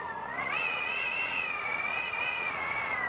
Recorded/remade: remade